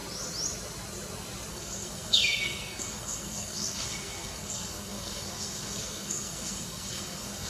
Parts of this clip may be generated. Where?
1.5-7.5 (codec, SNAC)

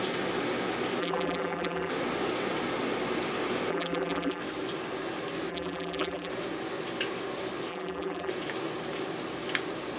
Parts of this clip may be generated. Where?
1.0-1.9 (vocoder, BigVGAN v2); 3.7-4.4; 5.5-6.3; 7.7-8.3

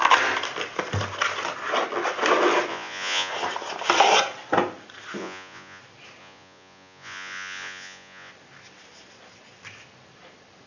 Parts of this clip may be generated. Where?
2.7-3.3 (vocoder, Vocos); 5.2-5.8; 6.2-8.3

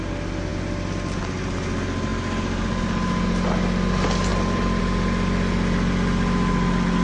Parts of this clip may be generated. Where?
none